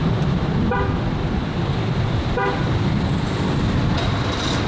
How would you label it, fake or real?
real